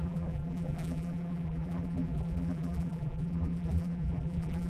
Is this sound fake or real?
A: fake